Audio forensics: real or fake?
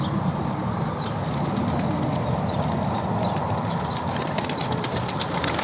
fake